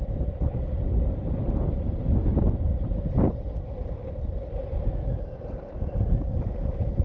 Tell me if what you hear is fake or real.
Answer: real